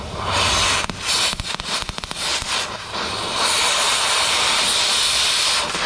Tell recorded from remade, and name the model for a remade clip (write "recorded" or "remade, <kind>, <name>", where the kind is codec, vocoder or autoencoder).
remade, vocoder, BigVGAN v2